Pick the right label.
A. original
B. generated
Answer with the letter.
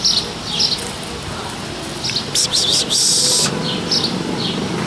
A